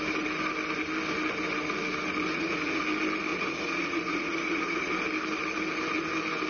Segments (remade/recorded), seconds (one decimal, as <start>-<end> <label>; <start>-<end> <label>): 0.0-2.3 recorded; 2.3-2.8 remade; 2.8-3.3 recorded; 3.3-4.9 remade; 4.9-6.5 recorded